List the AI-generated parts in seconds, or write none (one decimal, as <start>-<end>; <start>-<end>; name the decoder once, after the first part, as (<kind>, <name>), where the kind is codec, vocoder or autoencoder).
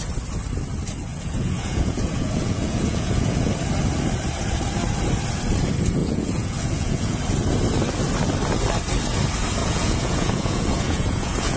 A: 1.1-3.5 (vocoder, Vocos); 6.0-7.2; 9.6-11.6